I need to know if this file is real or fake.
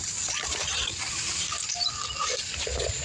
real